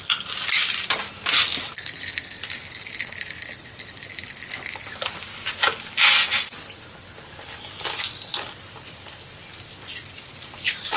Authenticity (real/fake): real